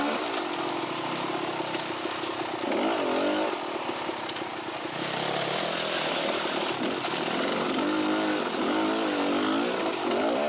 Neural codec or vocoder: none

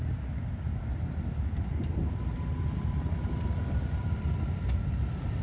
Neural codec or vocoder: none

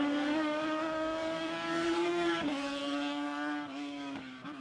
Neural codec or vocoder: codec, DAC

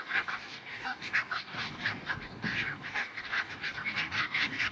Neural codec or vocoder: codec, DAC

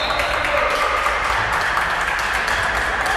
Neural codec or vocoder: none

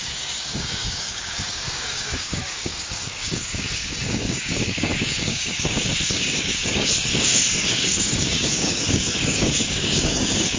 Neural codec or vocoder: codec, DAC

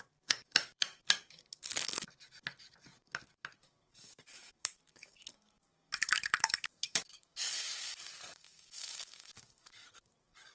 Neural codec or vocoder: codec, DAC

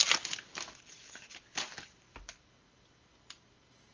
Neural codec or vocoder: none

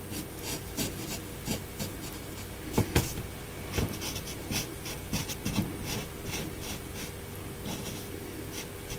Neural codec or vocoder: none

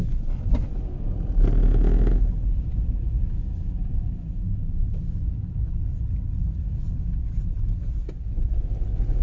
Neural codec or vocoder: none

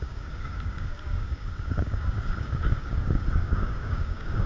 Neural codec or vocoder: codec, DAC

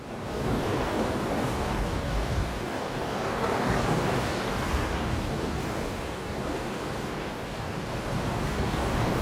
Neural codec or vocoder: codec, DAC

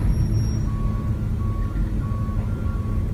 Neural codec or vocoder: none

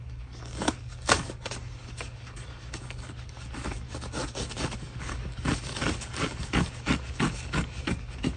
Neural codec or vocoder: codec, DAC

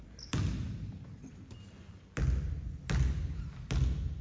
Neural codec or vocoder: none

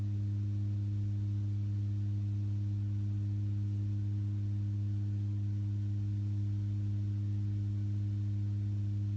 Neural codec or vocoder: none